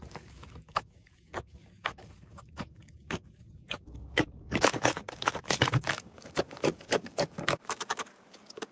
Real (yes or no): no